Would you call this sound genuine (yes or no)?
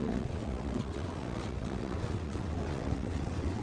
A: no